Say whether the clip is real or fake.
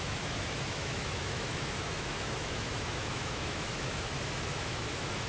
fake